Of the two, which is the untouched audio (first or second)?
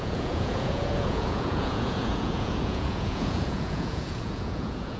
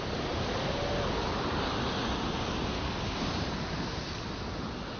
second